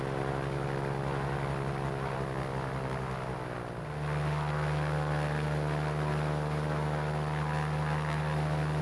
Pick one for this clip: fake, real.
real